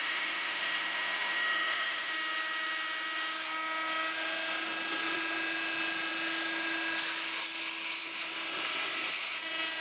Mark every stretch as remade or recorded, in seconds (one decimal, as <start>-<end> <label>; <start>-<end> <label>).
0.0-2.1 remade; 2.1-9.8 recorded